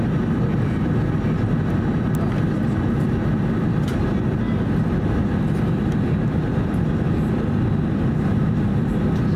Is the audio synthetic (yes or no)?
no